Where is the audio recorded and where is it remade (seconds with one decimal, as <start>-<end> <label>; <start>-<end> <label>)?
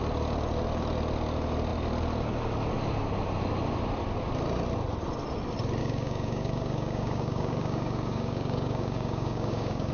0.0-5.8 recorded; 5.8-9.9 remade